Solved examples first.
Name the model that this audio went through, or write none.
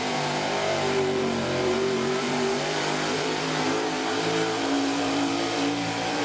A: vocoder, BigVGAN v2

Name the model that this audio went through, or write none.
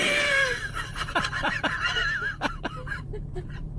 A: vocoder, BigVGAN v2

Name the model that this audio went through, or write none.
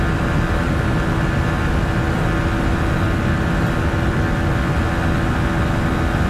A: none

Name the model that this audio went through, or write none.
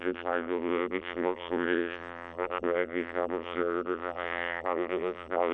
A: vocoder, BigVGAN v2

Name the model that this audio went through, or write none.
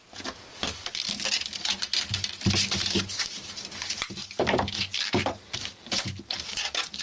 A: none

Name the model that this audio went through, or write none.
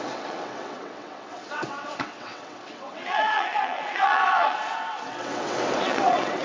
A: vocoder, WaveNeXt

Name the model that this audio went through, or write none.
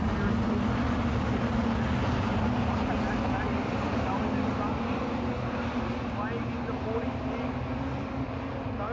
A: none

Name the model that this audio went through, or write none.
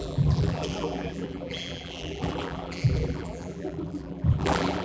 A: vocoder, BigVGAN v2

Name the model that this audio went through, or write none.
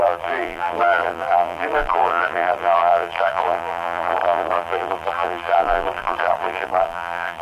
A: vocoder, BigVGAN v2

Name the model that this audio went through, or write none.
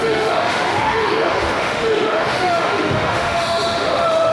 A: autoencoder, DAC-VAE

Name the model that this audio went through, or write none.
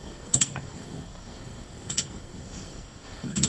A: codec, SNAC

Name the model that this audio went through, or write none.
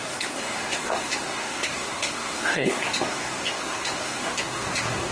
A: codec, SNAC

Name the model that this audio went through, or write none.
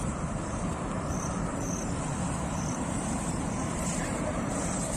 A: vocoder, BigVGAN v2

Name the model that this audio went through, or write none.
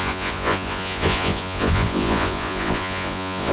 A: vocoder, Vocos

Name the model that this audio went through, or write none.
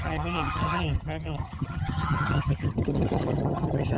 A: vocoder, HiFi-GAN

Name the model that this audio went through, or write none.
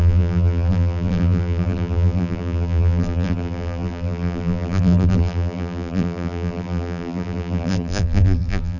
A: vocoder, BigVGAN v2